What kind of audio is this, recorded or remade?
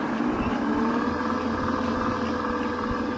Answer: recorded